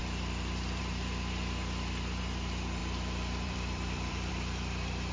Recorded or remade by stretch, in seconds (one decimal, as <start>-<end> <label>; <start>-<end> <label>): 0.0-0.8 remade; 0.8-2.8 recorded; 2.8-4.3 remade; 4.3-5.1 recorded